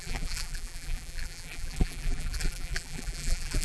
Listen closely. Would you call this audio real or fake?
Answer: fake